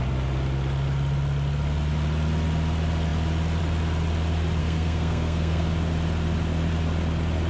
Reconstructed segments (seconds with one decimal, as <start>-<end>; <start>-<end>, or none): 4.6-5.7